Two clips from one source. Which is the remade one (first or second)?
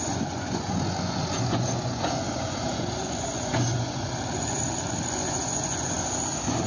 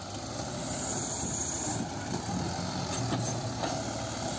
first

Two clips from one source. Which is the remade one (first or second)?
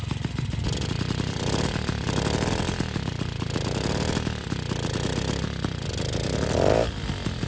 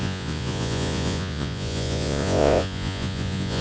second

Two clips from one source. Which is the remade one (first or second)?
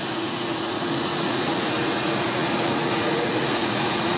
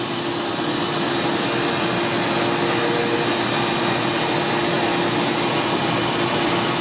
first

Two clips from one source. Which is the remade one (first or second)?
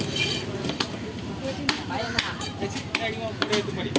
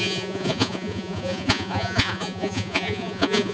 second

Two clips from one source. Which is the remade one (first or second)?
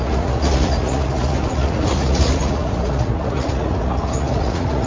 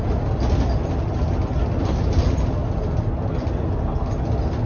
first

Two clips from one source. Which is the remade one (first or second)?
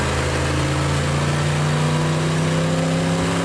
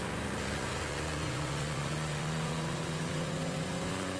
second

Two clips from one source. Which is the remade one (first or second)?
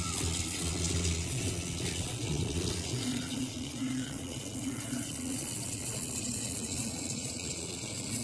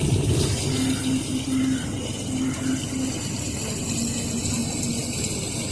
first